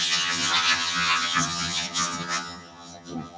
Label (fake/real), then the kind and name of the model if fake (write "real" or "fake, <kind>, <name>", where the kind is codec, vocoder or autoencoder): fake, vocoder, HiFi-GAN